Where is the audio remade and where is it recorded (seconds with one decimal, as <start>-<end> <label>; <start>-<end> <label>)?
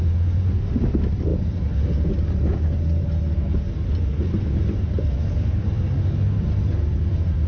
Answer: 0.0-7.5 recorded